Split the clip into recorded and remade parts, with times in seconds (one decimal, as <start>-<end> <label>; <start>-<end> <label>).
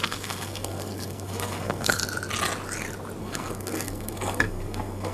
0.0-2.0 remade; 2.0-3.2 recorded; 3.2-5.1 remade